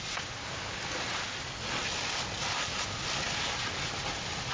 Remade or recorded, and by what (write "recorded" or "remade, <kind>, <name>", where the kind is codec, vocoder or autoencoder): recorded